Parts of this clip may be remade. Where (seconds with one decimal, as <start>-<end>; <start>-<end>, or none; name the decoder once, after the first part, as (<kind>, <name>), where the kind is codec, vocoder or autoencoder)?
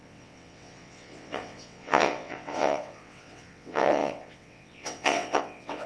0.0-5.9 (vocoder, WaveNeXt)